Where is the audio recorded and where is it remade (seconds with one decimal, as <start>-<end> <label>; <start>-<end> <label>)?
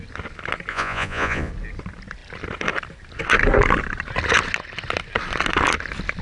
0.0-0.7 recorded; 0.7-1.5 remade; 1.5-6.2 recorded